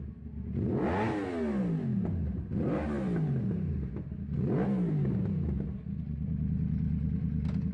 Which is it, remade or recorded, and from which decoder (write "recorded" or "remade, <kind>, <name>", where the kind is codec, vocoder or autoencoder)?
recorded